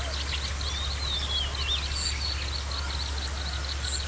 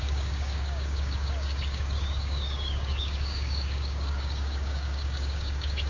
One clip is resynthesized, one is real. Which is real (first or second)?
first